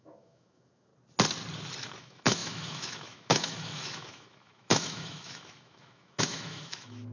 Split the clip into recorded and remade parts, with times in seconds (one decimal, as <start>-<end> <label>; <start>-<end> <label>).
0.0-0.9 remade; 0.9-2.0 recorded; 2.0-7.1 remade